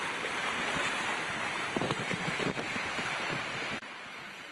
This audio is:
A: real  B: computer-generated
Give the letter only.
B